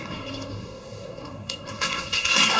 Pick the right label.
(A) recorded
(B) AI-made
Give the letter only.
B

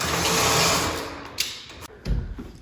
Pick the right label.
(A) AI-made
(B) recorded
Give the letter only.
B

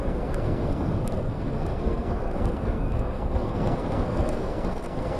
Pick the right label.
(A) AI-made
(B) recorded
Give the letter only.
A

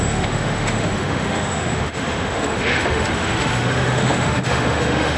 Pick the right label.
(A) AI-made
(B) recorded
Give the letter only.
A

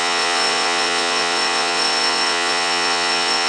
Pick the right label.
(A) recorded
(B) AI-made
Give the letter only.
B